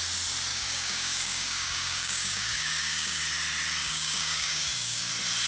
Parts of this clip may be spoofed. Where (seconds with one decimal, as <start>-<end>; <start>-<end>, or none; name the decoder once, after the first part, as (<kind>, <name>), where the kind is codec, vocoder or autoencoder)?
0.5-3.2 (codec, DAC); 3.8-5.1